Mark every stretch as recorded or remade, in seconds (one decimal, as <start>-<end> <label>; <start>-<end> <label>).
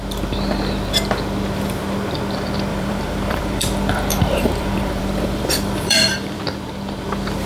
0.0-2.7 recorded; 2.7-6.4 remade; 6.4-7.5 recorded